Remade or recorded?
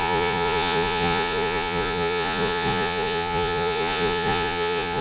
remade